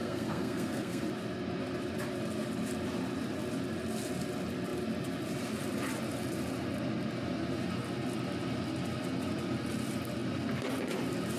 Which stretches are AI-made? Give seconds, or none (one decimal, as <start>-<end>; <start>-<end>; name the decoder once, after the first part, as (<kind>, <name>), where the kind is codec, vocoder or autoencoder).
0.0-1.0 (codec, SNAC)